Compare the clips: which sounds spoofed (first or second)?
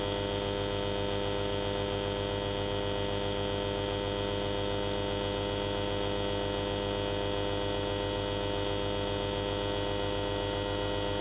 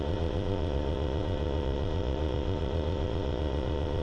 second